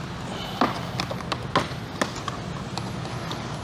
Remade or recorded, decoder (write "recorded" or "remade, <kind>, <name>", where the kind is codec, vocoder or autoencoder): recorded